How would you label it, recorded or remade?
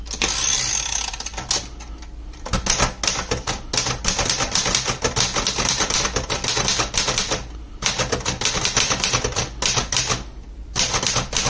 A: recorded